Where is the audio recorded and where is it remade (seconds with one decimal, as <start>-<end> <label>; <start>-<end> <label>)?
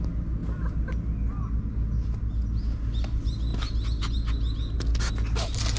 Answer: 0.0-5.8 recorded